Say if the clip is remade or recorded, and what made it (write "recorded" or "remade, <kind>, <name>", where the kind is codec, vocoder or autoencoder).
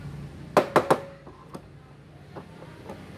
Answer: recorded